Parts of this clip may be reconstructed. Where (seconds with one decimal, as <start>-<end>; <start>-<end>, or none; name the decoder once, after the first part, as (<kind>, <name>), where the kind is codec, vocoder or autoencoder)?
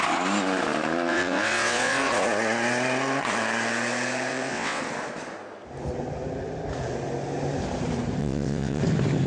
1.1-2.1 (vocoder, WaveNeXt); 4.3-4.8; 8.2-8.8